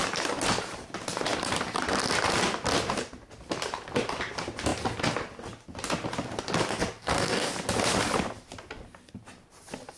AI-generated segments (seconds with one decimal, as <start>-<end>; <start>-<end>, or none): 7.0-7.5